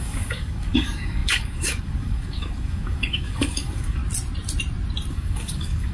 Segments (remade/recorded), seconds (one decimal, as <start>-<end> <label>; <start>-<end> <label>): 0.0-4.0 remade; 4.0-5.1 recorded; 5.1-5.9 remade